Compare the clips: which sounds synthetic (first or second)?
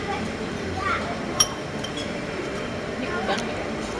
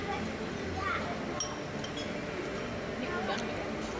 first